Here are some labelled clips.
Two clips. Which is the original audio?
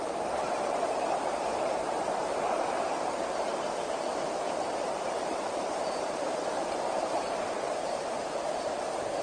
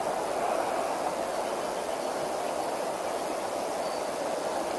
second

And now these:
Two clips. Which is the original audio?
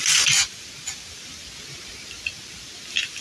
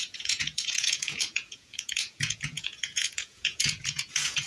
first